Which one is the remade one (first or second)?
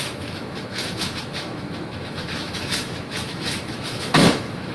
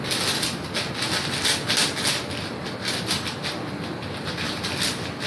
first